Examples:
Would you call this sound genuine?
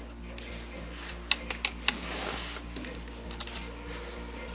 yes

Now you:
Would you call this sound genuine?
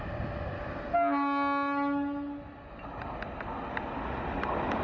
yes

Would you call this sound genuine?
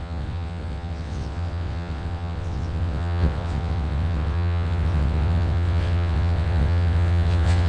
no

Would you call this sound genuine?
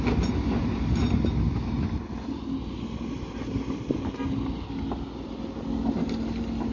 yes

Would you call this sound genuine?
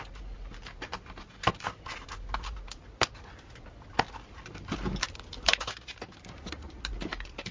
yes